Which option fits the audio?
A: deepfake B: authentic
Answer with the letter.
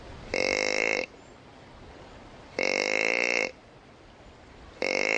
A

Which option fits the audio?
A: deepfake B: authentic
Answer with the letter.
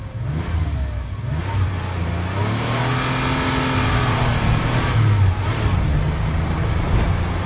B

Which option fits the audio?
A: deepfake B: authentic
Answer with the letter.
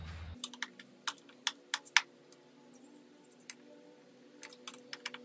B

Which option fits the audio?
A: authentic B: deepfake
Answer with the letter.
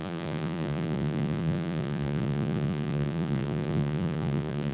B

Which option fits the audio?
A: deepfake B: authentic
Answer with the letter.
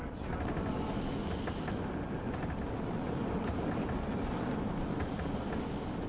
B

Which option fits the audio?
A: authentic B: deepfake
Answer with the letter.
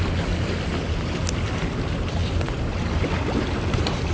A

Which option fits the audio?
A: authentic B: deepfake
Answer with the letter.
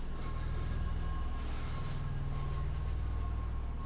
A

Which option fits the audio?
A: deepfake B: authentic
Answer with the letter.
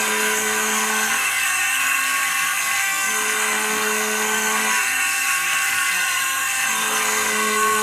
A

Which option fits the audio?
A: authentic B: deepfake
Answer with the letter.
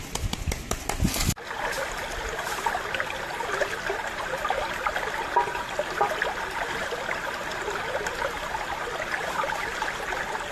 A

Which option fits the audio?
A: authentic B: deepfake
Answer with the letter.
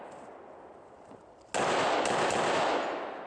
A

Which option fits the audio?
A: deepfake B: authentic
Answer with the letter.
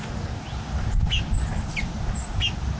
B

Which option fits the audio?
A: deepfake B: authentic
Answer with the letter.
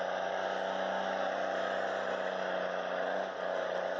B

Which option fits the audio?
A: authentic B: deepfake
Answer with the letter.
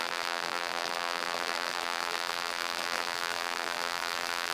B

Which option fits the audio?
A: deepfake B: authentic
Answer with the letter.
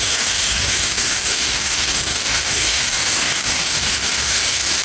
A